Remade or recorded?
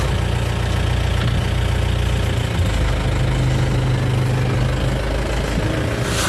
recorded